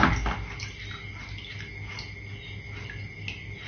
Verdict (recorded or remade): recorded